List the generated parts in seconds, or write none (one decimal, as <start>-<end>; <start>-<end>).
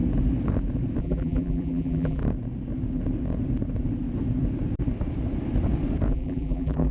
1.0-2.2; 6.1-6.9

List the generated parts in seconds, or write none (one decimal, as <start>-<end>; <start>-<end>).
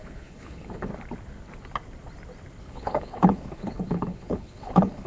0.0-0.9; 2.6-5.1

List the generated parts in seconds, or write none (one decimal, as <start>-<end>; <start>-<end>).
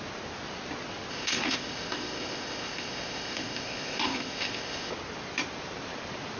1.1-4.9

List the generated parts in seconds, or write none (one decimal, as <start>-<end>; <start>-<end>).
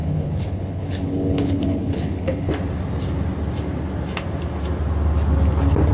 0.0-2.5